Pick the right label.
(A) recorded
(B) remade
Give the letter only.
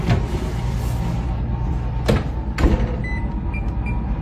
A